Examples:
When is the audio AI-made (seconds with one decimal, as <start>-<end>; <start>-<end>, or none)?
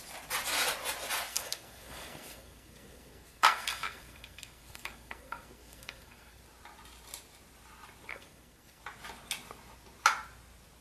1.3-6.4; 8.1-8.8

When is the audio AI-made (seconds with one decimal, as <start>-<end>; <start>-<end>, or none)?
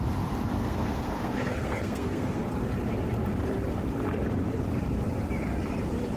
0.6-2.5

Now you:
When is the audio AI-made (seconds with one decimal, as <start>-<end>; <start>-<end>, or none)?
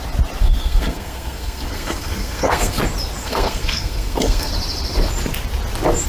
0.4-2.8; 3.2-4.5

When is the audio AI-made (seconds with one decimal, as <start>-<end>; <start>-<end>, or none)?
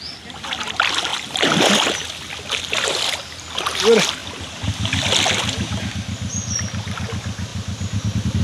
none